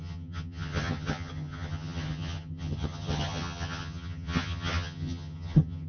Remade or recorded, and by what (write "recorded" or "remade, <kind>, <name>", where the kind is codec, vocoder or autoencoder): remade, vocoder, HiFi-GAN